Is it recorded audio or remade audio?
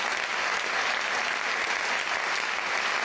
recorded